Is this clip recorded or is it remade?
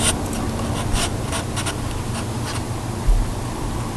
recorded